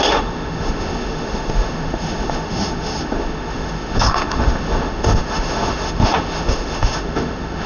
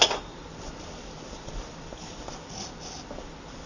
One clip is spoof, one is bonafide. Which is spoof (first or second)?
first